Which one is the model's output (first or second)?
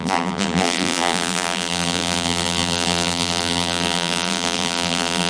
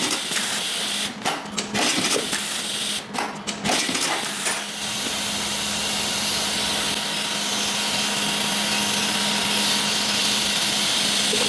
first